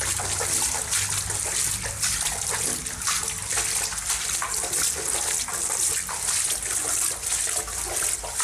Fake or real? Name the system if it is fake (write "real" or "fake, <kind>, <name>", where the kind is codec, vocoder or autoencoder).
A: real